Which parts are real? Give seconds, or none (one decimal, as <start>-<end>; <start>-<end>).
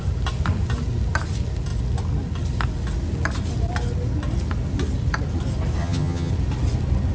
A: 0.0-5.8; 6.3-7.1